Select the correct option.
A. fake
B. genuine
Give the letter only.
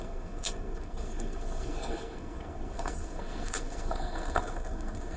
A